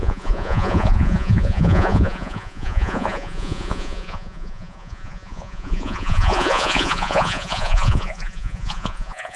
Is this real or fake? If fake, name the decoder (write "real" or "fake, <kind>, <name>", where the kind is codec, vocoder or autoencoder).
fake, vocoder, Vocos